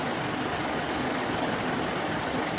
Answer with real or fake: real